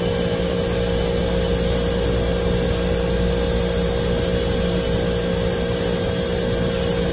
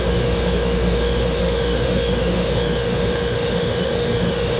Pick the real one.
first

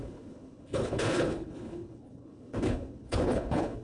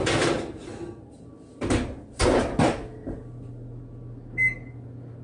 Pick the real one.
second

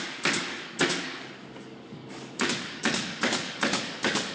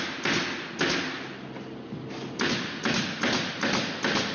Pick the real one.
second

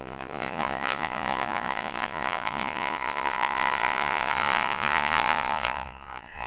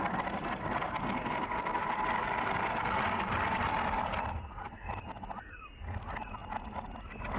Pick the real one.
second